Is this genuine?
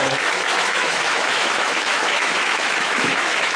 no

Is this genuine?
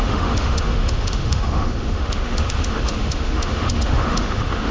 no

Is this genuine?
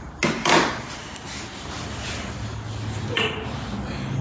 yes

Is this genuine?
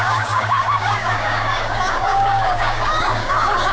no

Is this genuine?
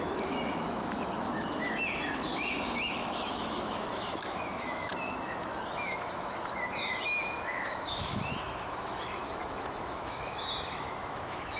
no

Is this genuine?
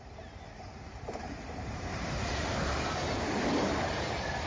no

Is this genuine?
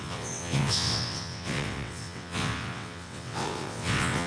no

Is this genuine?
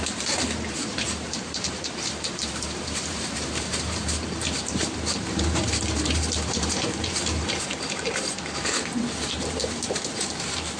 no